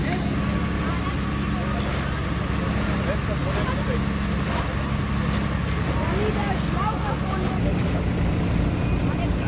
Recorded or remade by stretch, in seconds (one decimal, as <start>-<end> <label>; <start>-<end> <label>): 0.0-9.5 recorded

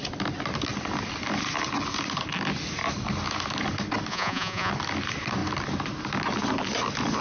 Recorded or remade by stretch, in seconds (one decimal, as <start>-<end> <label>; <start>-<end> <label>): 0.0-4.1 recorded; 4.1-4.7 remade; 4.7-7.2 recorded

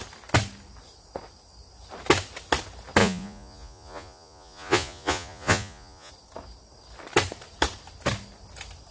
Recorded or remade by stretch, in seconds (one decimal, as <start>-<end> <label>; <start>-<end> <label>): 0.0-3.0 recorded; 3.0-6.1 remade; 6.1-8.9 recorded

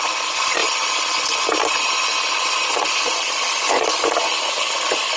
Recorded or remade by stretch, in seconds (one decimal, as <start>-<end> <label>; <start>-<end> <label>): 0.0-5.2 recorded

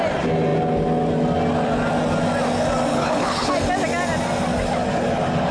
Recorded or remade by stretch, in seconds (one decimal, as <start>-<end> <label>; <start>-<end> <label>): 0.0-2.9 recorded; 2.9-3.5 remade; 3.5-5.5 recorded

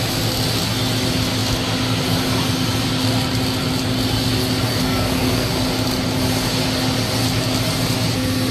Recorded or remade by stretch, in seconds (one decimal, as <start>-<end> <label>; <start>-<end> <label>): 0.0-4.7 recorded; 4.7-5.5 remade; 5.5-8.5 recorded

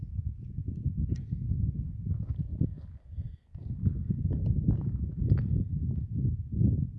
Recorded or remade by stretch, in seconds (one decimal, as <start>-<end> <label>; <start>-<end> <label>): 0.0-7.0 recorded